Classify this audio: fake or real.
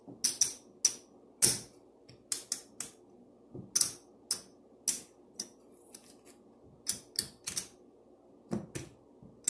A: real